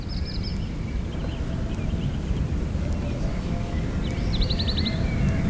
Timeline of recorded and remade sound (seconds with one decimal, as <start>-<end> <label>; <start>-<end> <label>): 0.0-3.3 recorded; 3.3-3.9 remade; 3.9-5.5 recorded